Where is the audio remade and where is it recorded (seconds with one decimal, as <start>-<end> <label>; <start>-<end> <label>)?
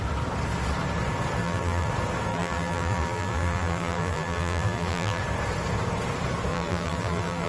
0.0-1.4 recorded; 1.4-1.9 remade; 1.9-2.3 recorded; 2.3-5.2 remade; 5.2-6.5 recorded; 6.5-7.5 remade